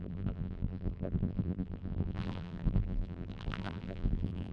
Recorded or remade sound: remade